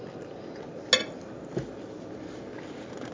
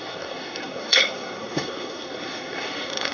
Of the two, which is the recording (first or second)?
first